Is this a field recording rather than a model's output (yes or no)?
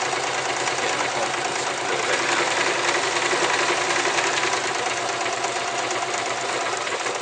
yes